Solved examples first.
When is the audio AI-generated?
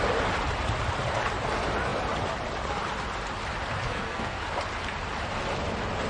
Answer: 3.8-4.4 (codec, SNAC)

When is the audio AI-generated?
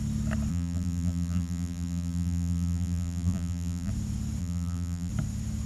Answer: 0.5-3.9 (vocoder, BigVGAN v2); 4.4-5.1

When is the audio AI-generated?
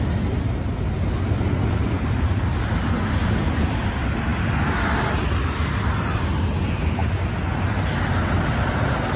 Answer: none